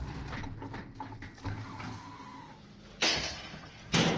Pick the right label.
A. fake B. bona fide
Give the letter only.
B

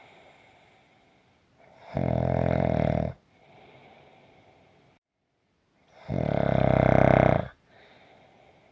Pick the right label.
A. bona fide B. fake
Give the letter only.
A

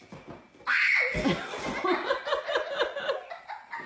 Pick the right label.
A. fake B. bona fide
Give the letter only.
B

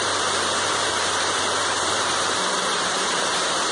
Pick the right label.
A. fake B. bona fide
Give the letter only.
A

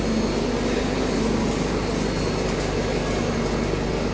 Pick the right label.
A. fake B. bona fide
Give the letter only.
B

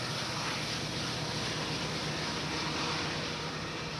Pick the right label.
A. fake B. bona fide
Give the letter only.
B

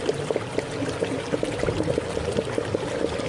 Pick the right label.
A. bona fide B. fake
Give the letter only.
A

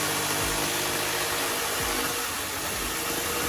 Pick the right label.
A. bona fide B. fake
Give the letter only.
A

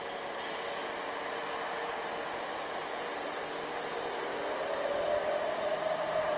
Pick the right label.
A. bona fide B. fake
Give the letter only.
A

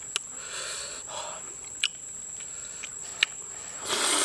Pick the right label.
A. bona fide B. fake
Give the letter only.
A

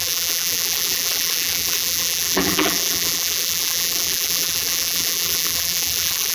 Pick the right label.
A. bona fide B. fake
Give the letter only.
B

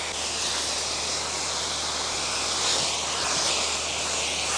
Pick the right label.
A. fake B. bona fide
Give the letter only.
B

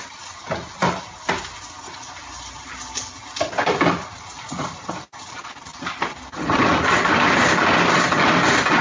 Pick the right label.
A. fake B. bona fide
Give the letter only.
B